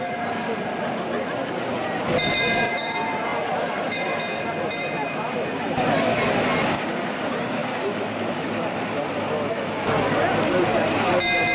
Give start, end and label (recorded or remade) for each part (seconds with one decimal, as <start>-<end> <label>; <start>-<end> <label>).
0.0-11.5 recorded